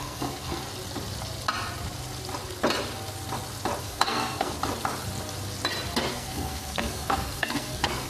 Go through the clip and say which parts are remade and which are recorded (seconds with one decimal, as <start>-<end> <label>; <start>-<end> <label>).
0.0-0.6 remade; 0.6-3.8 recorded; 3.8-4.6 remade; 4.6-6.1 recorded; 6.1-8.1 remade